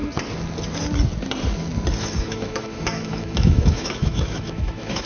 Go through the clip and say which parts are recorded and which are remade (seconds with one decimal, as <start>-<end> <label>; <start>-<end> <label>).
0.0-2.2 recorded; 2.2-5.1 remade